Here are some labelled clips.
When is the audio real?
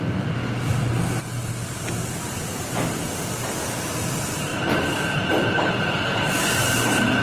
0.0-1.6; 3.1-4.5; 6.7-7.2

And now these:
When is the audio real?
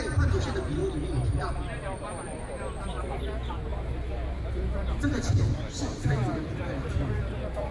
0.8-2.8